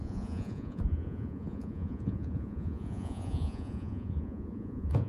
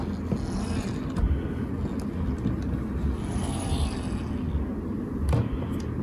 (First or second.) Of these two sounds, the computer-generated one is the first